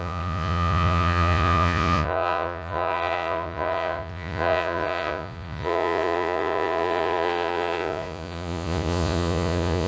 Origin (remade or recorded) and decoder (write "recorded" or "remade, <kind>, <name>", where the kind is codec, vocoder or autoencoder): remade, vocoder, Vocos